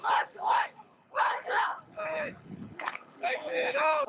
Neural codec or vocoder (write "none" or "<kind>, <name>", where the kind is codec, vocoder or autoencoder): codec, HILCodec